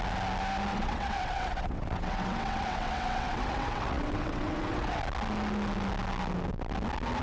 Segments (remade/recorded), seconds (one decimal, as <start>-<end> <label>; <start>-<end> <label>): 0.0-0.7 recorded; 0.7-5.0 remade; 5.0-7.2 recorded